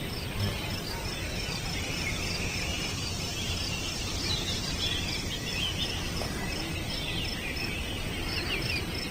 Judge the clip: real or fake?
real